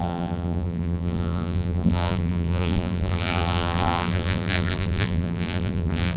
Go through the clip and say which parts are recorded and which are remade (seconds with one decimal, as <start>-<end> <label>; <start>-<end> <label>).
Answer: 0.0-6.2 remade